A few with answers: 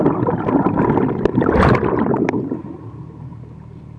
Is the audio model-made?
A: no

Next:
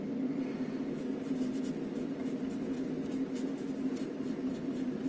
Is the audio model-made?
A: no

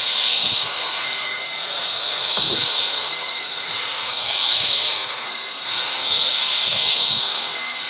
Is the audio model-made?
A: yes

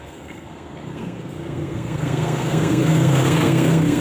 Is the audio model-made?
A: yes